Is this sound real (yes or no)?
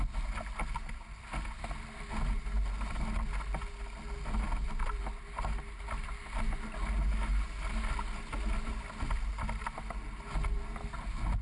yes